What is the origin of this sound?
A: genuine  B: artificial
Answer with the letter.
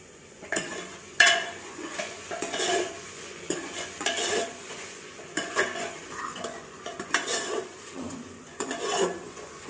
B